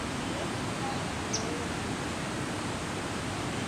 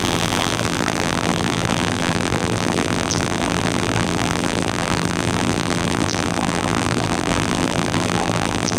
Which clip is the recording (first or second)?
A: first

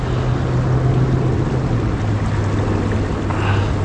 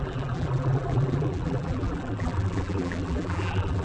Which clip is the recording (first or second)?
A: first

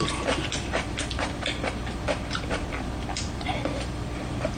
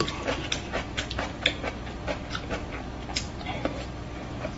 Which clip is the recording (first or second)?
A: second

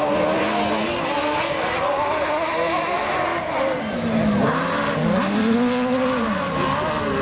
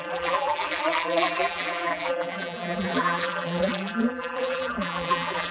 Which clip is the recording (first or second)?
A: first